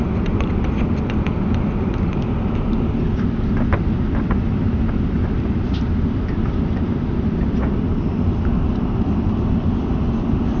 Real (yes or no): yes